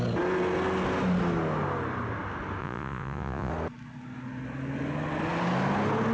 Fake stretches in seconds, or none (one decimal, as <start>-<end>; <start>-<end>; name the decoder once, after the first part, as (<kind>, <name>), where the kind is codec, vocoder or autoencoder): 2.6-3.5 (vocoder, Vocos)